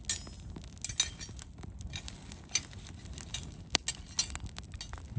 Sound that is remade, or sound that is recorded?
recorded